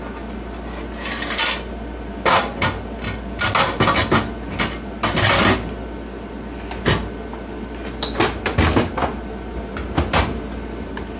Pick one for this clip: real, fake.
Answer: real